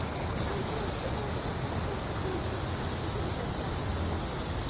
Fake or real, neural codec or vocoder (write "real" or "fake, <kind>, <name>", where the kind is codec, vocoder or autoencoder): real